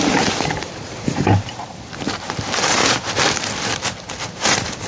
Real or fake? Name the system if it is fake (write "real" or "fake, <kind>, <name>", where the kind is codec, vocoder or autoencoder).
fake, vocoder, BigVGAN v2